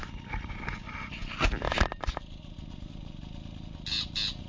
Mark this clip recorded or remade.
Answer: recorded